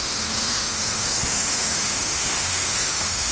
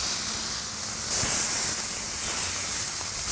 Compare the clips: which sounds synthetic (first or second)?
first